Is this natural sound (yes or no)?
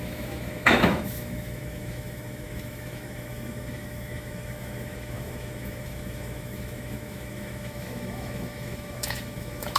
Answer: no